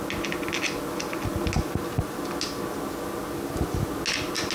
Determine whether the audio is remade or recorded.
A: recorded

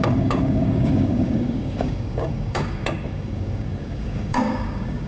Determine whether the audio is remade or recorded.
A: remade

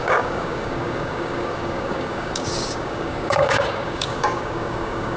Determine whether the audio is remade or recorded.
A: remade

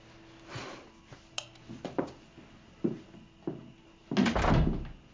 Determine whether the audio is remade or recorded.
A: recorded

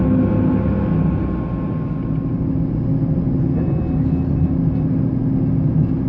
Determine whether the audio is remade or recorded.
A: recorded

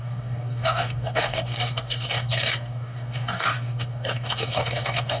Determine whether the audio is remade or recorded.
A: remade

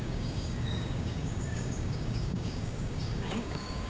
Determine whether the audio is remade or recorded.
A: remade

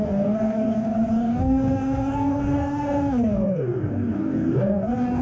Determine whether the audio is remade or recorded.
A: remade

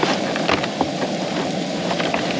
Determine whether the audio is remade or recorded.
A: recorded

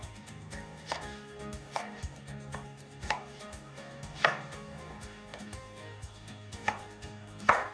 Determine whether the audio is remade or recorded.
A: remade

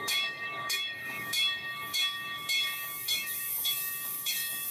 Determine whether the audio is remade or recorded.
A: remade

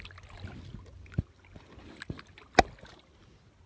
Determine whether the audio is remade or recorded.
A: recorded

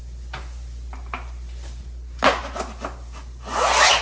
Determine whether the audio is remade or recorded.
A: recorded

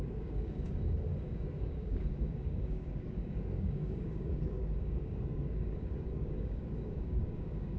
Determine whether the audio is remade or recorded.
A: remade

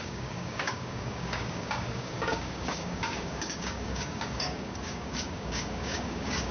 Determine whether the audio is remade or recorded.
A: remade